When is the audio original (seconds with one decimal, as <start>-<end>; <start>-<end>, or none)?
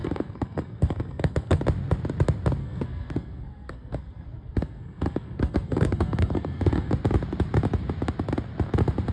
1.6-2.6; 6.9-9.1